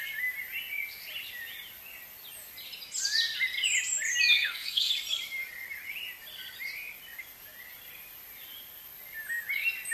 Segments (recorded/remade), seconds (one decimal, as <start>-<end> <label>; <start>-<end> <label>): 0.0-4.3 recorded; 4.3-4.9 remade; 4.9-9.9 recorded